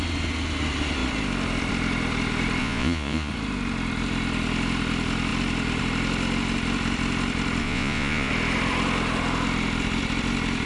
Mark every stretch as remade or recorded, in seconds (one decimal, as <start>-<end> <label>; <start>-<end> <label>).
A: 0.0-2.6 recorded; 2.6-3.3 remade; 3.3-7.6 recorded; 7.6-8.3 remade; 8.3-10.7 recorded